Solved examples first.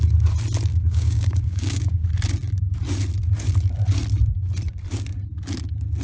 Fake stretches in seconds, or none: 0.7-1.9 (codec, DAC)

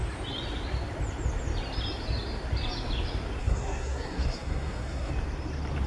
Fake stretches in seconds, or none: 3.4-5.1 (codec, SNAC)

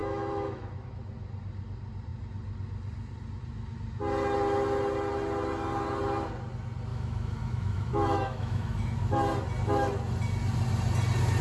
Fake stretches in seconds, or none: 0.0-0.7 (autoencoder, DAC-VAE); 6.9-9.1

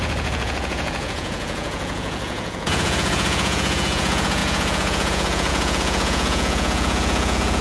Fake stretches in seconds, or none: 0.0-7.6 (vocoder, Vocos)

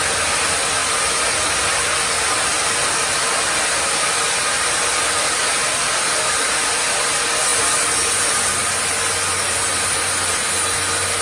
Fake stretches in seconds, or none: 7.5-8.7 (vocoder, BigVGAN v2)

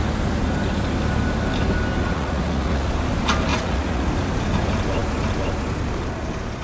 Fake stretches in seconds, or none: 2.0-2.9 (vocoder, Vocos); 3.5-4.1

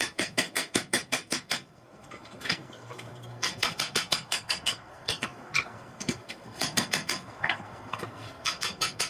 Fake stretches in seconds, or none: 0.0-9.1 (codec, SNAC)